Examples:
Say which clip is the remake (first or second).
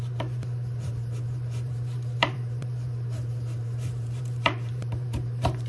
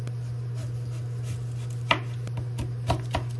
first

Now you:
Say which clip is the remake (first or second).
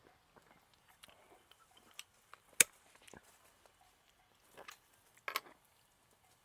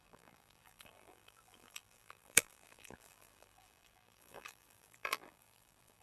second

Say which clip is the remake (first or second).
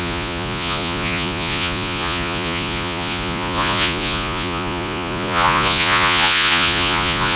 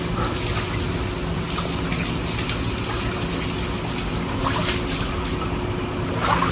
first